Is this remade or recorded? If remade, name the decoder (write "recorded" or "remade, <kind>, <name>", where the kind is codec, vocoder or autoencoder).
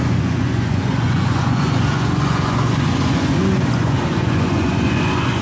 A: remade, vocoder, Vocos